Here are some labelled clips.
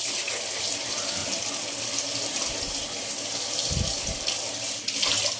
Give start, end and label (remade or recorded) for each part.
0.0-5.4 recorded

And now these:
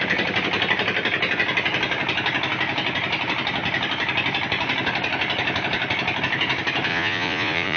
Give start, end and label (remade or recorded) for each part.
0.0-6.9 recorded; 6.9-7.8 remade

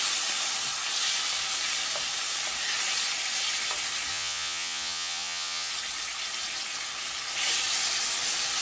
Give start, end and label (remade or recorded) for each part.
0.0-4.1 recorded; 4.1-5.7 remade; 5.7-8.6 recorded

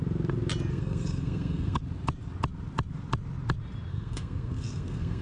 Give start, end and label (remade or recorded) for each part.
0.0-0.7 recorded; 0.7-1.8 remade; 1.8-3.9 recorded; 3.9-5.2 remade

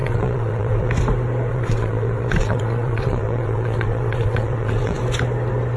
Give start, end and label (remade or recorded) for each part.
0.0-0.9 remade; 0.9-1.5 recorded; 1.5-5.0 remade; 5.0-5.8 recorded

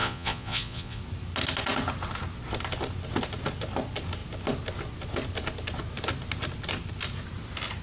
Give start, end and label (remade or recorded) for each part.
0.0-1.0 remade; 1.0-7.8 recorded

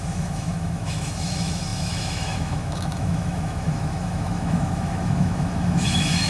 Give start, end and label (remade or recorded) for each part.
0.0-6.3 remade

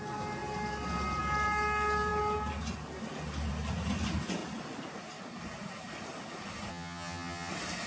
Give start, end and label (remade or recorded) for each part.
0.0-6.7 recorded; 6.7-7.5 remade; 7.5-7.9 recorded